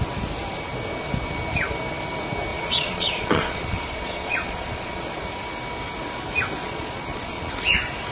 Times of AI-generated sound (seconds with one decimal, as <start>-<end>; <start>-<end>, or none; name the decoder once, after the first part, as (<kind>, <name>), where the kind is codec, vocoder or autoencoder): 2.5-5.1 (vocoder, Vocos); 6.6-7.5